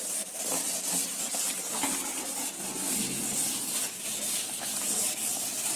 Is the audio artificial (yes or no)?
no